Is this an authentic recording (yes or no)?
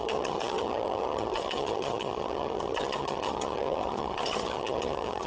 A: no